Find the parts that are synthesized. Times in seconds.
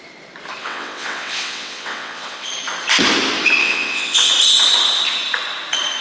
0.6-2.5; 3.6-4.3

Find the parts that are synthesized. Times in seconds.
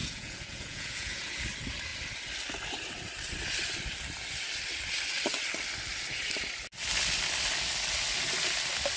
0.0-1.4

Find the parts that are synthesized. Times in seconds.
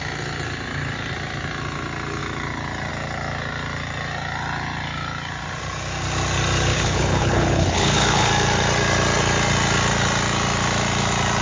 6.7-8.3